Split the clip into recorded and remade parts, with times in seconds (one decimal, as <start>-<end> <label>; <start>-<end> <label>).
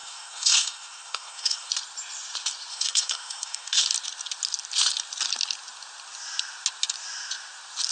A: 0.0-1.7 remade; 1.7-2.7 recorded; 2.7-3.8 remade; 3.8-7.9 recorded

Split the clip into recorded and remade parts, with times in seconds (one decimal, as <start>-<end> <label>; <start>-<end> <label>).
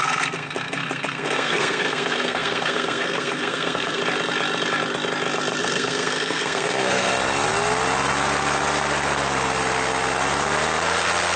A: 0.0-4.0 remade; 4.0-5.6 recorded; 5.6-7.1 remade; 7.1-11.4 recorded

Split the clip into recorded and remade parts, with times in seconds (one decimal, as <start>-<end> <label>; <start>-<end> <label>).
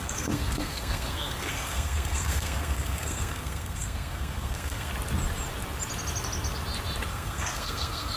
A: 0.0-4.9 remade; 4.9-7.1 recorded; 7.1-8.2 remade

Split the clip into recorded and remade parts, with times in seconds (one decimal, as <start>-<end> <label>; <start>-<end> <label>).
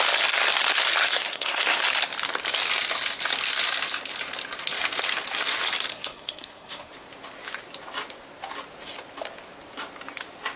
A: 0.0-1.0 recorded; 1.0-1.8 remade; 1.8-5.9 recorded; 5.9-6.9 remade; 6.9-10.6 recorded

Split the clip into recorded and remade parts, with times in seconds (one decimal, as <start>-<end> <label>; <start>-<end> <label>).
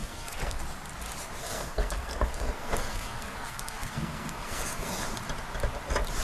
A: 0.0-0.6 remade; 0.6-1.4 recorded; 1.4-5.0 remade; 5.0-6.2 recorded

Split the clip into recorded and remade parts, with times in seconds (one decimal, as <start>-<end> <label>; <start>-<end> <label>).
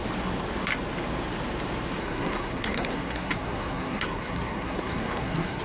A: 0.0-2.0 recorded; 2.0-5.6 remade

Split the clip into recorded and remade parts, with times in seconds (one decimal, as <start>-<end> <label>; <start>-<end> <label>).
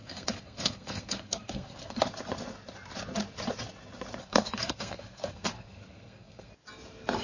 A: 0.0-2.0 remade; 2.0-4.2 recorded; 4.2-6.5 remade; 6.5-7.2 recorded